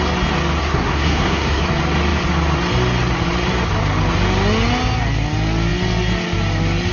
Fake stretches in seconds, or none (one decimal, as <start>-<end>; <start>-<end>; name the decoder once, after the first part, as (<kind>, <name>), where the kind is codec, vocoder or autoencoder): 0.6-1.6 (codec, SNAC)